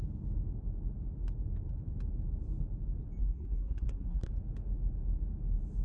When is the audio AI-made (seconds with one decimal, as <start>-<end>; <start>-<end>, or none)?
3.2-4.3